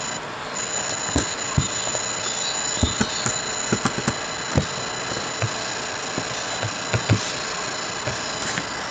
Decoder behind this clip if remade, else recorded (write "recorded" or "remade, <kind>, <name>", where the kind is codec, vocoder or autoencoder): recorded